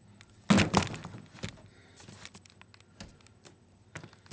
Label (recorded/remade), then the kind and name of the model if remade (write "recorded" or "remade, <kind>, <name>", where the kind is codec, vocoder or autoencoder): recorded